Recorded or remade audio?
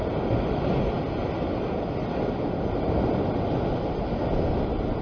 recorded